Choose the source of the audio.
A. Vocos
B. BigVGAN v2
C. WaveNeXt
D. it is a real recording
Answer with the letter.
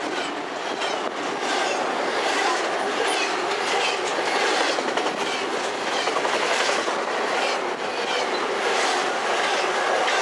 D